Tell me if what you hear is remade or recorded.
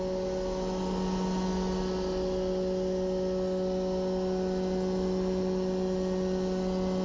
recorded